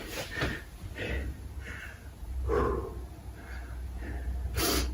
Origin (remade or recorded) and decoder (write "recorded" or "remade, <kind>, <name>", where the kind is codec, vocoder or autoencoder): recorded